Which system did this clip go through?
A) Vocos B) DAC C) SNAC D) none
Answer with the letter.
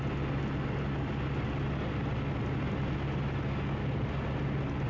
D